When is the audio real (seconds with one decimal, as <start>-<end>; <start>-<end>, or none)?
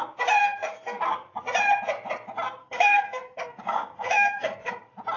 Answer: 0.0-0.4; 1.0-2.6; 4.7-5.2